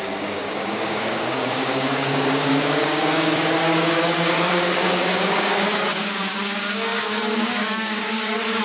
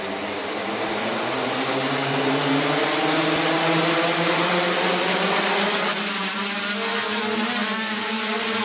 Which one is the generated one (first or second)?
first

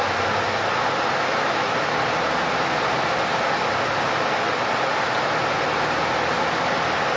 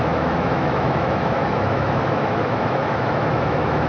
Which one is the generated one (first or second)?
second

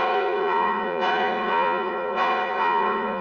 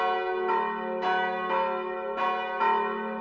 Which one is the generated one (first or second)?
first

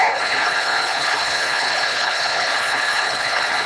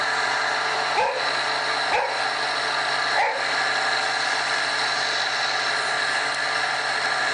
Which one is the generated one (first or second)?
first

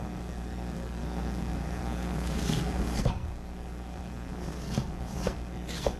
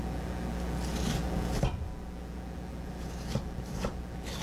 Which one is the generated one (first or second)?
first